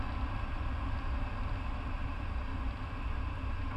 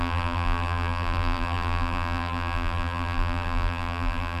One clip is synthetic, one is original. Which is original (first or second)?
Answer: first